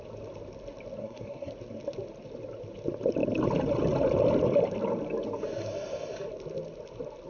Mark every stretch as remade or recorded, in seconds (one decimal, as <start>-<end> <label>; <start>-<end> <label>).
0.0-1.0 recorded; 1.0-1.5 remade; 1.5-7.3 recorded